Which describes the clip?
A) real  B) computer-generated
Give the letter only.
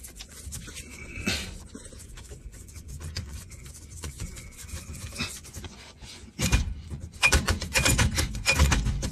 B